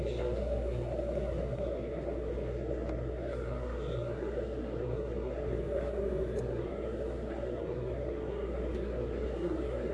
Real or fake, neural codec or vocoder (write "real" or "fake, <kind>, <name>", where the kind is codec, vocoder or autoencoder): fake, codec, SNAC